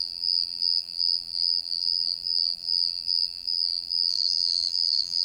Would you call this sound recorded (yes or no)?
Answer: no